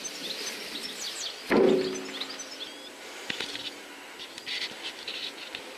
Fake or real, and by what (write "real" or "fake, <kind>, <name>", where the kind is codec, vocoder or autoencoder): real